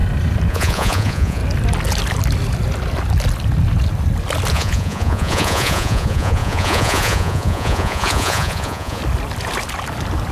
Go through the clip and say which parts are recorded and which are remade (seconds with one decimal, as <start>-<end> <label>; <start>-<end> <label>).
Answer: 0.0-0.5 recorded; 0.5-1.4 remade; 1.4-4.5 recorded; 4.5-9.0 remade; 9.0-10.3 recorded